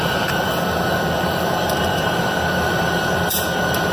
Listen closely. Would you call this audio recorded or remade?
remade